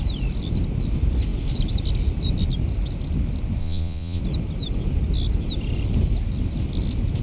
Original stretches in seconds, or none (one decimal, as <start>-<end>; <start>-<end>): 0.0-3.6; 4.2-7.2